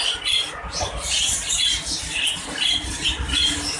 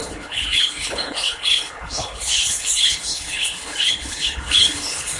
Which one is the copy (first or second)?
second